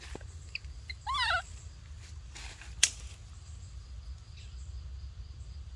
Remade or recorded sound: recorded